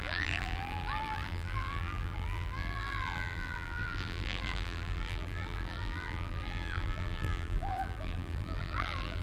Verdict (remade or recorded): remade